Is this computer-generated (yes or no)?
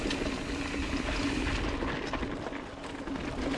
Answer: no